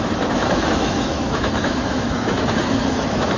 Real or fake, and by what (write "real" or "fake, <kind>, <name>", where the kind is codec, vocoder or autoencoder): fake, autoencoder, DAC-VAE